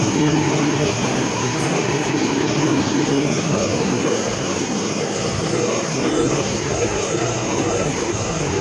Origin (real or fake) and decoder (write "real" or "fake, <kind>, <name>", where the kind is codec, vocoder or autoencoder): fake, codec, SNAC